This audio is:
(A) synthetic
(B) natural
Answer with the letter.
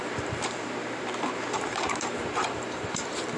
A